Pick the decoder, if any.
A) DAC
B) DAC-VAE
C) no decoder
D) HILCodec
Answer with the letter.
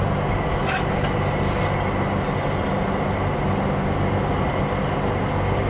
C